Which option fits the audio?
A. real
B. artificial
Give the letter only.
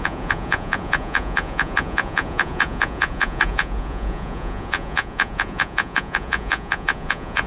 B